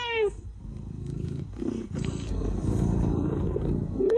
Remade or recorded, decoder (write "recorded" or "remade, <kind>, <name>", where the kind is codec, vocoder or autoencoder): remade, codec, SNAC